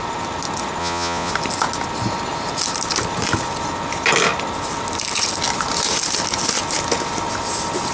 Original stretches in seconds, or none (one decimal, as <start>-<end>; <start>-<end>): 0.0-0.8; 1.3-7.9